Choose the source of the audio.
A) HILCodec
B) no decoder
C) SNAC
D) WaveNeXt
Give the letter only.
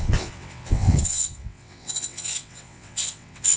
D